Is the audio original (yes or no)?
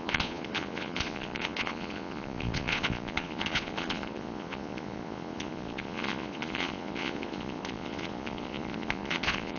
no